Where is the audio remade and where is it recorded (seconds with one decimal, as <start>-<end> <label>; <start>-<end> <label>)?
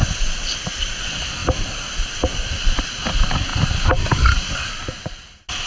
0.0-5.7 recorded